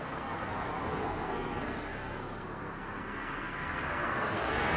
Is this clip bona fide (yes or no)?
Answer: no